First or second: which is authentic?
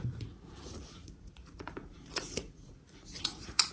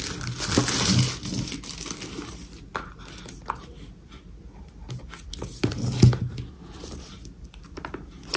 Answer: second